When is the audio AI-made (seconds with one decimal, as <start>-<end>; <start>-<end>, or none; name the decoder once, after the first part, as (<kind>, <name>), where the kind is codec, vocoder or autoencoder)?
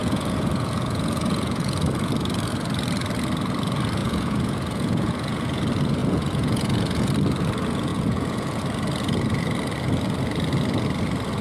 0.0-2.1 (vocoder, Vocos); 4.0-5.6; 6.0-7.1; 7.9-8.6